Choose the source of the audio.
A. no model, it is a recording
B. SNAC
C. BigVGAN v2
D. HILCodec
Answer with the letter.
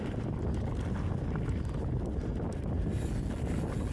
A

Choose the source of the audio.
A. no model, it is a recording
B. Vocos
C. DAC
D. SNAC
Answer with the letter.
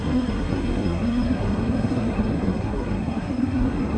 D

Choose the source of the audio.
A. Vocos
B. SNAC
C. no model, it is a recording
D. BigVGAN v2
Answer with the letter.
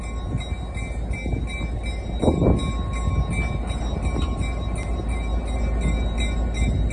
C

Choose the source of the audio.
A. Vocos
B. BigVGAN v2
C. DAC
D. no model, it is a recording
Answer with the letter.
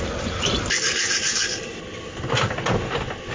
D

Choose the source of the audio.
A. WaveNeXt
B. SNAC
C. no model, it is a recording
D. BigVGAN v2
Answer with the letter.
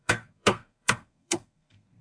B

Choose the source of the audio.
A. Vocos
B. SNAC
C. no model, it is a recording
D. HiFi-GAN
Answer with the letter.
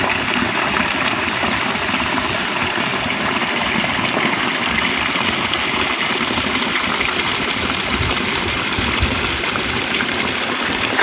C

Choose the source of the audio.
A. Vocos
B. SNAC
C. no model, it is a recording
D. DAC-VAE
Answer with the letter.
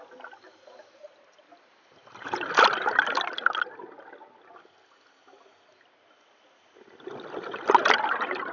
C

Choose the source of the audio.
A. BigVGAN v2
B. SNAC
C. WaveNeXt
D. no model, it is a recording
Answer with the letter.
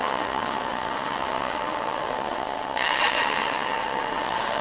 C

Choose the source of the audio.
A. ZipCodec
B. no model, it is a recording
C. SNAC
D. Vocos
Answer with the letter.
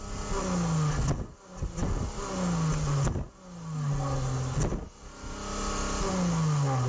B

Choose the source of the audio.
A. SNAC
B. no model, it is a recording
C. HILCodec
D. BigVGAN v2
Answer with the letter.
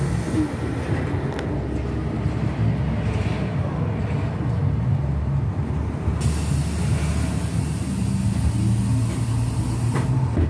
B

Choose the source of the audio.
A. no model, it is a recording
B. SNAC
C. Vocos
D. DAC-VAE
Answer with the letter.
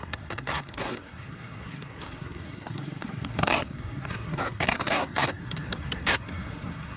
B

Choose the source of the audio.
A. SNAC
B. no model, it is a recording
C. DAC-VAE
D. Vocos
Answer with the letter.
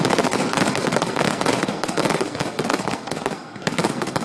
A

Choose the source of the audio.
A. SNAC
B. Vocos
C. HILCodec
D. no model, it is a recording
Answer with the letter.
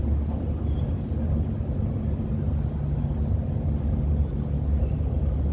D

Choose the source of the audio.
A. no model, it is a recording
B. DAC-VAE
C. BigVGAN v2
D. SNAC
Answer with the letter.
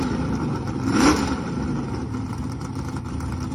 C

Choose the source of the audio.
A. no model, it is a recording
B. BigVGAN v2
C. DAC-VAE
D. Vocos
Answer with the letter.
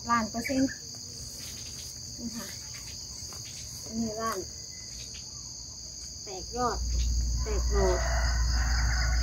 A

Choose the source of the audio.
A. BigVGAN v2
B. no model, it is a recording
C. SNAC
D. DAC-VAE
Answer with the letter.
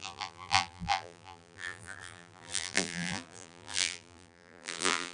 A